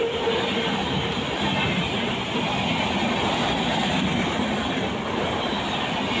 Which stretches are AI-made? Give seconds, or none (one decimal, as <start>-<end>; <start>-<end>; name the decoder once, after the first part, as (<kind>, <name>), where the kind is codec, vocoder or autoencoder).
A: none